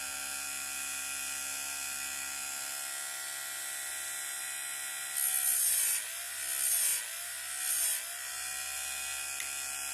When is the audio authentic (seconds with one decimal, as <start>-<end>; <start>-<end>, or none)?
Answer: 0.0-9.9